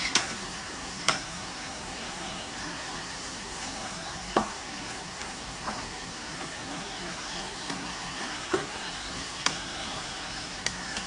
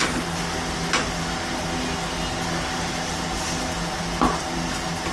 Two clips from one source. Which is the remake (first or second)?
first